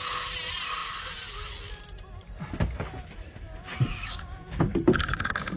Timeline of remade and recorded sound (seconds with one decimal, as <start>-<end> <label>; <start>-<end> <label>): 0.0-3.9 recorded; 3.9-4.6 remade; 4.6-5.6 recorded